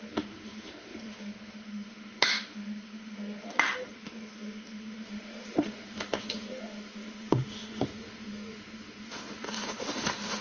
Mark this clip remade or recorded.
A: remade